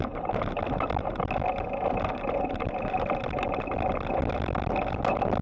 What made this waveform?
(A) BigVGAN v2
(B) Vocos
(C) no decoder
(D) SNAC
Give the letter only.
C